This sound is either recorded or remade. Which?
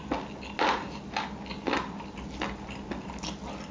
recorded